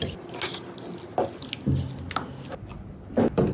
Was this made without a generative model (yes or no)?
yes